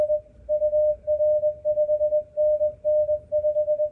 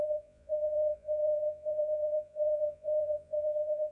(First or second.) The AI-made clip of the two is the second